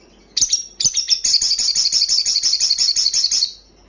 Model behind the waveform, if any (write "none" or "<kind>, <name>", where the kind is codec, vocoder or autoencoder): none